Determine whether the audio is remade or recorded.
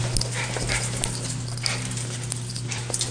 recorded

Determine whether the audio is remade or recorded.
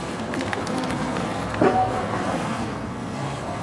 remade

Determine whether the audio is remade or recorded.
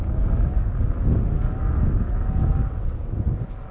recorded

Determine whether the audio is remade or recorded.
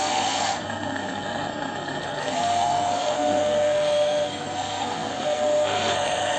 remade